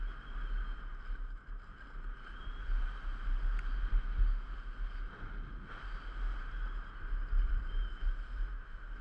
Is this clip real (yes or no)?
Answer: yes